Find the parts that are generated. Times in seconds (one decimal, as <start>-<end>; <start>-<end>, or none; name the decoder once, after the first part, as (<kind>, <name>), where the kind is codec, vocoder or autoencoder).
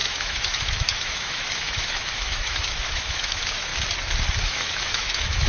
0.0-3.7 (autoencoder, DAC-VAE); 4.4-5.5